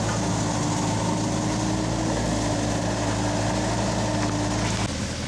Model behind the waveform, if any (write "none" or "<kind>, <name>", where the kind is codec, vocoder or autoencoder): none